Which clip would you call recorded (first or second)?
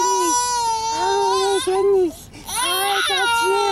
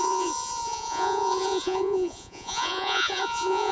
first